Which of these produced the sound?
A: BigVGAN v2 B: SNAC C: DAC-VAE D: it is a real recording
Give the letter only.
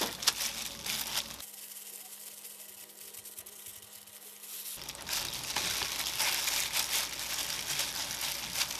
D